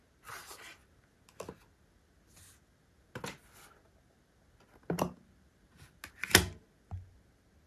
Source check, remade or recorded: recorded